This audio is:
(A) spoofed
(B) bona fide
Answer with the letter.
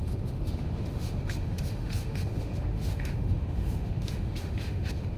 A